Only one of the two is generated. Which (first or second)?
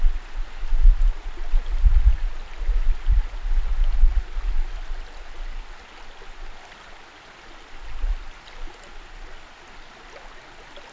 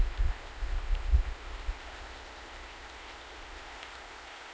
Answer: second